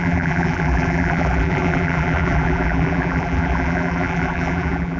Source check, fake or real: fake